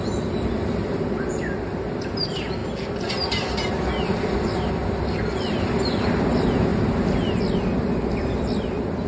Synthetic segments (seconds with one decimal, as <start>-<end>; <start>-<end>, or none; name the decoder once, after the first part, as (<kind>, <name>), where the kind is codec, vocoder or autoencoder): none

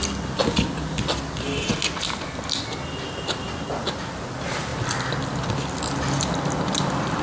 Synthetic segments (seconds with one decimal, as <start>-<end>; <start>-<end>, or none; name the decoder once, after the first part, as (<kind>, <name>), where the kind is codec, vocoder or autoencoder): none